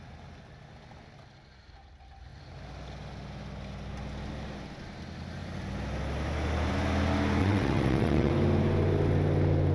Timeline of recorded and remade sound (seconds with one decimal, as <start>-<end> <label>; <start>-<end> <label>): 0.0-7.4 recorded; 7.4-8.3 remade; 8.3-9.7 recorded